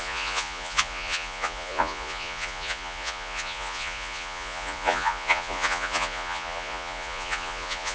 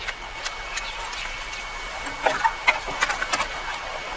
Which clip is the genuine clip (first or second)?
second